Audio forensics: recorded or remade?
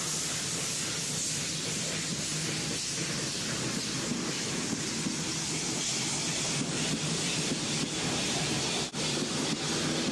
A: recorded